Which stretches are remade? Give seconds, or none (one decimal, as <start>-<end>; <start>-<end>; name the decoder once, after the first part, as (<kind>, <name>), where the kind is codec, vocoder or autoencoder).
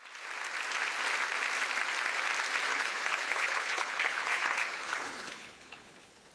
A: 2.7-6.3 (codec, HILCodec)